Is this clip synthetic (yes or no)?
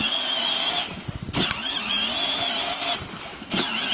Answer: no